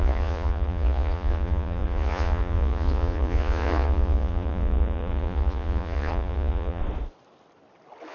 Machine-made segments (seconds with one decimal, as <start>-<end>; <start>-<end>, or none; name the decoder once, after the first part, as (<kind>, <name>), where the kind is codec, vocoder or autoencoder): 0.0-6.8 (vocoder, Vocos)